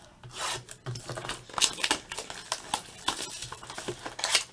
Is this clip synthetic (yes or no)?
no